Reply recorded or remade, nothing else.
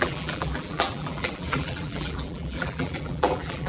remade